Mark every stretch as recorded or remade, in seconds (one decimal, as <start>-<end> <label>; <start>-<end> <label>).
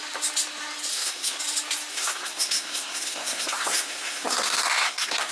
0.0-0.9 recorded; 0.9-1.4 remade; 1.4-1.9 recorded; 1.9-5.3 remade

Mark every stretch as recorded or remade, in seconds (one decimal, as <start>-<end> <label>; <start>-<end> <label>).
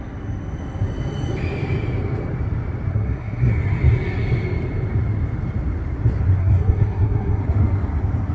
0.0-2.9 recorded; 2.9-3.5 remade; 3.5-6.4 recorded; 6.4-7.4 remade; 7.4-8.3 recorded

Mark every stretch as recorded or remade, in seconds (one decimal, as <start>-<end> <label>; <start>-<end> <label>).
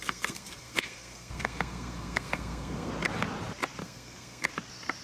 0.0-2.9 remade; 2.9-3.8 recorded; 3.8-4.5 remade; 4.5-5.0 recorded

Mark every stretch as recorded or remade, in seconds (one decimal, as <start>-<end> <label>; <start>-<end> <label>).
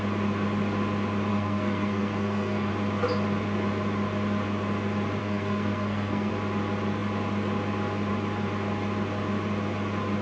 0.0-1.3 recorded; 1.3-2.7 remade; 2.7-5.2 recorded; 5.2-6.3 remade; 6.3-10.2 recorded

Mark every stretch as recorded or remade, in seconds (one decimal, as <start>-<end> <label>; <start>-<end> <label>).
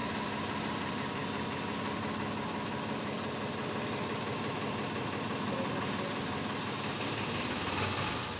0.0-8.4 recorded